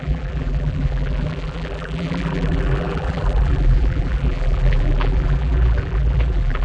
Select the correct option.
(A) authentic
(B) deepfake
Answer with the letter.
B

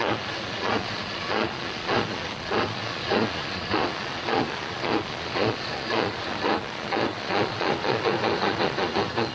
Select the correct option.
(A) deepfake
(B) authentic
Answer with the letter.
A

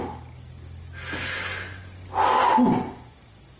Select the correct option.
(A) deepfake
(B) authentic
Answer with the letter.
B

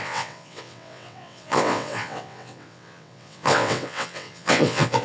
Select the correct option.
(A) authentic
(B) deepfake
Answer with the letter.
B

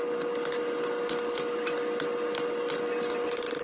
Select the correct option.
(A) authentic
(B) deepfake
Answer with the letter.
A